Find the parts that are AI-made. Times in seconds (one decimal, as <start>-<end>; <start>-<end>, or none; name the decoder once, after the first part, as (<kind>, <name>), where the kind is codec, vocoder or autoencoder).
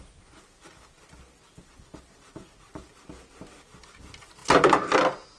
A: none